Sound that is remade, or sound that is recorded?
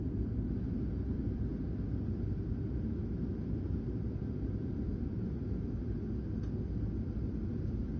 recorded